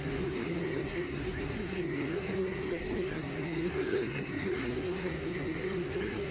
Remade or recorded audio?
remade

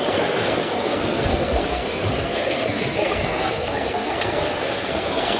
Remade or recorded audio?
remade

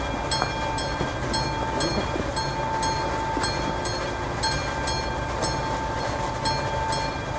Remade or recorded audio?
recorded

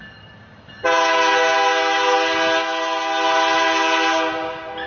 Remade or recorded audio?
recorded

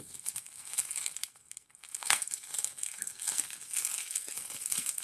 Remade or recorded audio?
remade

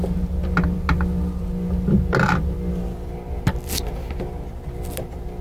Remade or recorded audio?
recorded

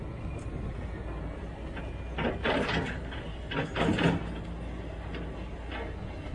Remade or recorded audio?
recorded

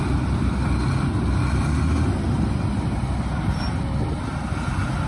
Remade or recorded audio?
recorded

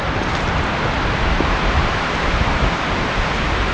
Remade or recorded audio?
recorded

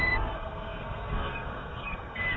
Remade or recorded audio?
remade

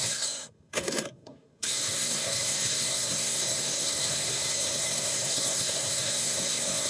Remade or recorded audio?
remade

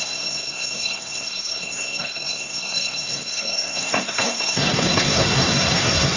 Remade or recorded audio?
remade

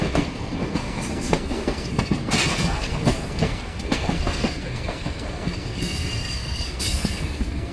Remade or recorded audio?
remade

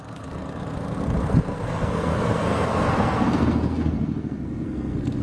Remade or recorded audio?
remade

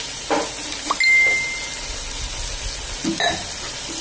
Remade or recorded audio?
recorded